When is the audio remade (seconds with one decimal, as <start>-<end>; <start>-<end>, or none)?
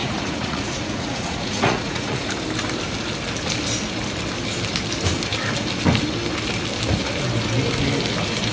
0.0-2.3